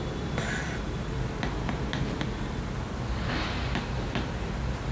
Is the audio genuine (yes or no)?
yes